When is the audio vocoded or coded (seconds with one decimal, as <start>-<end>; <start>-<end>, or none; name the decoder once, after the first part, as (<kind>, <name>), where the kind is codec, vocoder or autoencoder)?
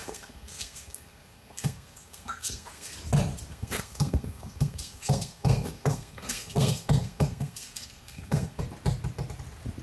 0.0-2.9 (codec, SNAC); 3.5-8.6